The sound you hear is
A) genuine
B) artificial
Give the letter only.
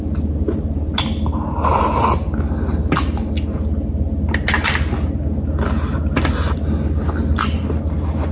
A